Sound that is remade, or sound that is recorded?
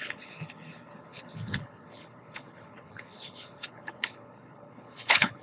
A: remade